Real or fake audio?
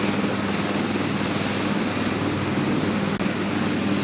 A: real